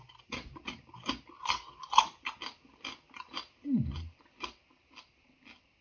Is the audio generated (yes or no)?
no